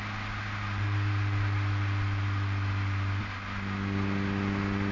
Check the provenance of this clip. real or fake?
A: real